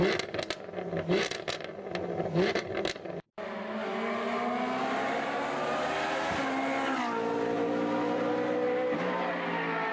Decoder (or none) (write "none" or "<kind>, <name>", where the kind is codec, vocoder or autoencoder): none